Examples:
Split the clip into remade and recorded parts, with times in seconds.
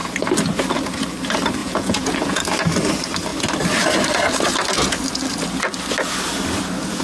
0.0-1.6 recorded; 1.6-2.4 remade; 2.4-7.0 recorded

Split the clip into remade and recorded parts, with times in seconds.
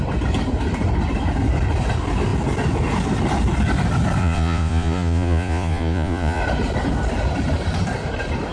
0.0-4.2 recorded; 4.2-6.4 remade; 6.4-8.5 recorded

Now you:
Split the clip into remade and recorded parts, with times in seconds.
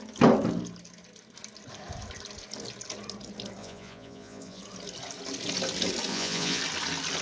0.0-3.6 recorded; 3.6-4.6 remade; 4.6-6.1 recorded; 6.1-6.6 remade; 6.6-7.2 recorded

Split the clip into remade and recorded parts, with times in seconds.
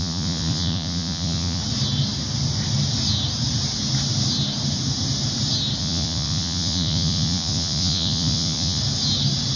0.0-1.6 remade; 1.6-5.8 recorded; 5.8-8.8 remade; 8.8-9.6 recorded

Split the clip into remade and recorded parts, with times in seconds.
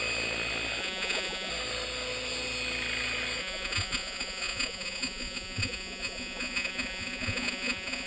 0.0-0.8 recorded; 0.8-1.5 remade; 1.5-3.4 recorded; 3.4-8.1 remade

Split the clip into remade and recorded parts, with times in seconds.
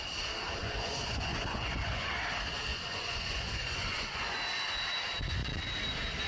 0.0-0.6 recorded; 0.6-2.1 remade; 2.1-2.7 recorded; 2.7-4.4 remade; 4.4-6.3 recorded